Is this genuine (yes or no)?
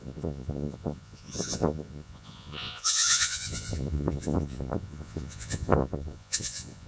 no